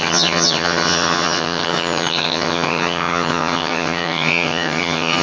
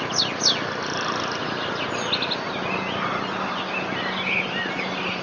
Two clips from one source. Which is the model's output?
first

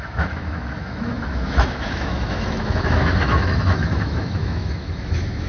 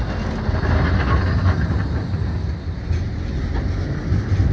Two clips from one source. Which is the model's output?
first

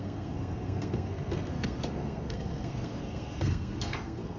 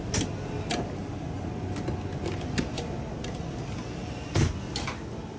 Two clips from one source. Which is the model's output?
first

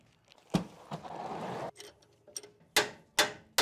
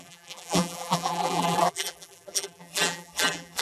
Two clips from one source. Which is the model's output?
second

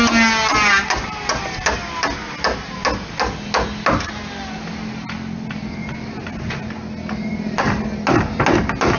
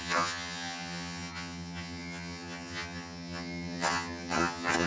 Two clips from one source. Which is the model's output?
second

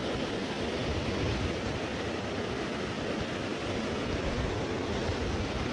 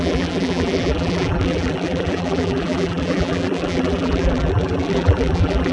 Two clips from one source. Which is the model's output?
second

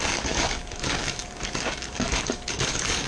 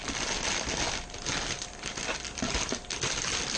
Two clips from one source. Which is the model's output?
first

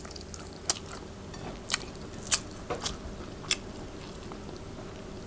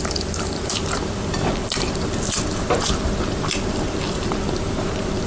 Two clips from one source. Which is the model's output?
second